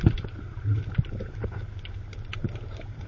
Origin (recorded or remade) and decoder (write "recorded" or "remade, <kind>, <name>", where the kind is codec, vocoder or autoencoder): remade, vocoder, BigVGAN v2